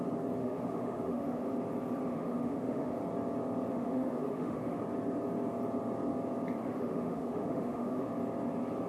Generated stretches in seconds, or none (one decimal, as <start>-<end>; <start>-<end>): 0.4-1.5; 2.1-3.0; 3.7-4.8; 6.6-8.1